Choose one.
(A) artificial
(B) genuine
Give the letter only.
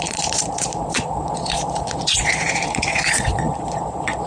A